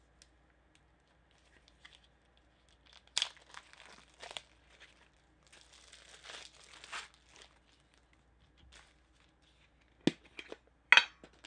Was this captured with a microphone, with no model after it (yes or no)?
yes